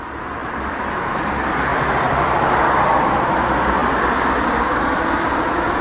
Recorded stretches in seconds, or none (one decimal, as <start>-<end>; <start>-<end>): 0.0-0.4; 1.2-1.7; 3.4-5.8